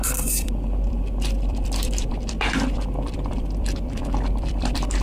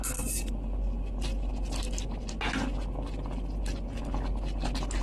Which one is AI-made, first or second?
first